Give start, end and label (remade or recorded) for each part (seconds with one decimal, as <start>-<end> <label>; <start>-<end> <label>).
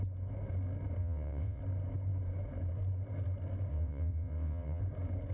0.0-1.0 recorded; 1.0-1.6 remade; 1.6-3.7 recorded; 3.7-4.8 remade; 4.8-5.3 recorded